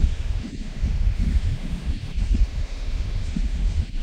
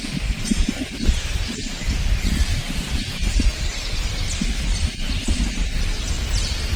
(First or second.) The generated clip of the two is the first